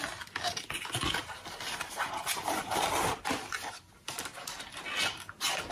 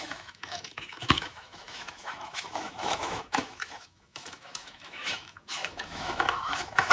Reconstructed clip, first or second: second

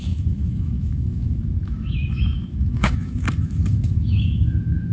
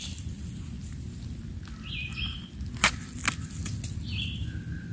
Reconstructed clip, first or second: first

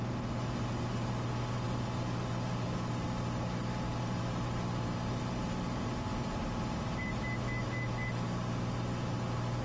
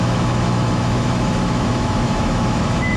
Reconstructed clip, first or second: second